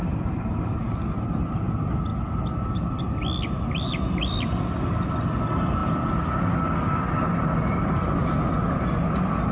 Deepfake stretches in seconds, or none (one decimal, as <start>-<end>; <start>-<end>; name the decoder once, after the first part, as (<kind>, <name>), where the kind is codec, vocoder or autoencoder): none